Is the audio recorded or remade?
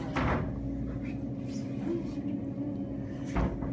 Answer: recorded